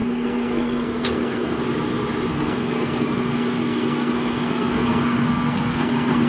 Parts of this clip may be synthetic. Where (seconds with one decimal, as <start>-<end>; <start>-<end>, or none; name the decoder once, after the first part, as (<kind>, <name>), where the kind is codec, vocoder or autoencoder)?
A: 0.0-1.6 (codec, SNAC); 2.3-6.3